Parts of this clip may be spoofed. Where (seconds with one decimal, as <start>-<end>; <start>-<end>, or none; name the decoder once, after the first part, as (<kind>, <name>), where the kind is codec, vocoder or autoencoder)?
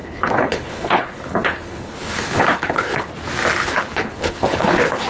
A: 0.0-3.1 (codec, HILCodec); 3.6-5.1